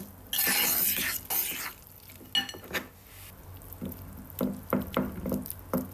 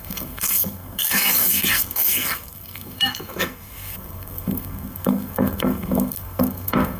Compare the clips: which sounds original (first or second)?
first